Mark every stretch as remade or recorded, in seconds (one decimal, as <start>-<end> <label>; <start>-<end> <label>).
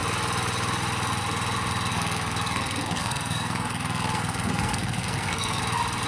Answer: 0.0-1.9 recorded; 1.9-5.6 remade; 5.6-6.1 recorded